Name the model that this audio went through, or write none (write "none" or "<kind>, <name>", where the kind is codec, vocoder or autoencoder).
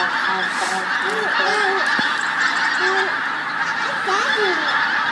none